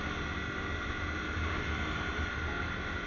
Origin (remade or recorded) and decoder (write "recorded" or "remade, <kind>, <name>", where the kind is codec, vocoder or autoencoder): remade, vocoder, BigVGAN v2